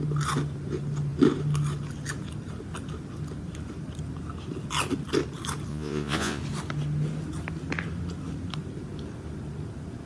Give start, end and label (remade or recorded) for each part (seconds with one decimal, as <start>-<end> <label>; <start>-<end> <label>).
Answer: 0.0-5.7 recorded; 5.7-6.4 remade; 6.4-10.1 recorded